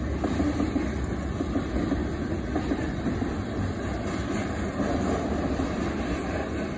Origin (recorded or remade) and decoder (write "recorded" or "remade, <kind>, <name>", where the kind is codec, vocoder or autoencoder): recorded